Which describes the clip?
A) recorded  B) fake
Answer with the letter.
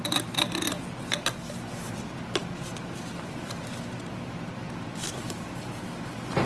A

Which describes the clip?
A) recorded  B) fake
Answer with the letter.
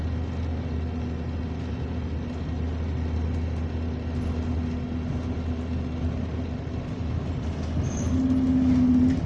A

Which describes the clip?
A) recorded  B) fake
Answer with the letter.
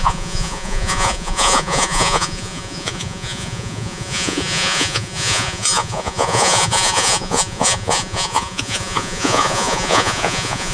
B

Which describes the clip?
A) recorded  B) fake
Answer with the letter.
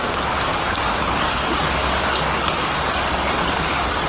B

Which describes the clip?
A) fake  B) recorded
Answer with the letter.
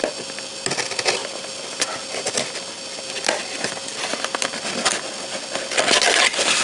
B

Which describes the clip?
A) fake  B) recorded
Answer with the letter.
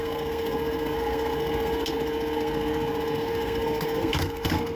A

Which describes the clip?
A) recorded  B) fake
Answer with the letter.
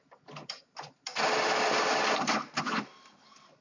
A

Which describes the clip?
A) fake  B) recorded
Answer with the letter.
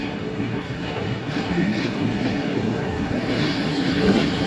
A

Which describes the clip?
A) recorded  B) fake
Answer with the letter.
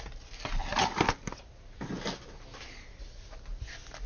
A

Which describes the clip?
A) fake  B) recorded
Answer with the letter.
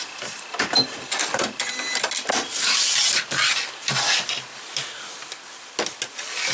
B